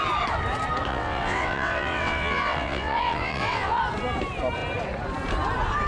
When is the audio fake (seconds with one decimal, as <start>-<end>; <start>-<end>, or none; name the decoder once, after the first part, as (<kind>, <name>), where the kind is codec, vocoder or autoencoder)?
0.9-3.8 (vocoder, WaveNeXt)